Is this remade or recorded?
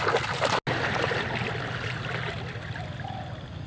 recorded